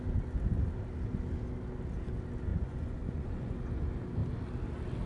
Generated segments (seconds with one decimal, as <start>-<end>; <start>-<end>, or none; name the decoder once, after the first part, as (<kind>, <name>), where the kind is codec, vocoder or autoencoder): 2.5-3.8 (vocoder, Vocos)